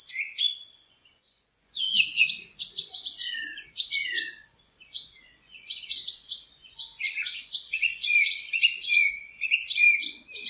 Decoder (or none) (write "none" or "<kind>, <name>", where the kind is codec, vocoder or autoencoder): vocoder, Vocos